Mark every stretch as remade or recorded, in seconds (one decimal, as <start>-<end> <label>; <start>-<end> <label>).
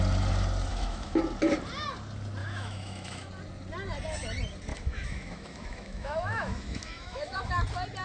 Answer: 0.0-0.7 recorded; 0.7-1.2 remade; 1.2-2.4 recorded; 2.4-3.3 remade; 3.3-4.7 recorded; 4.7-7.5 remade; 7.5-8.0 recorded